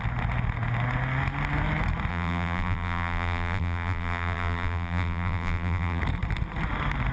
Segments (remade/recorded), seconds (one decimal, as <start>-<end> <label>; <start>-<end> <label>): 0.0-2.1 recorded; 2.1-6.0 remade; 6.0-7.1 recorded